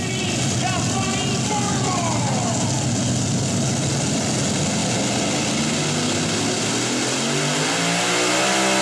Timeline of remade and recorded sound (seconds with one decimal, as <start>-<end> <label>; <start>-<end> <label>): 0.0-8.8 recorded